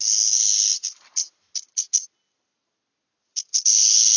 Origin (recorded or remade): recorded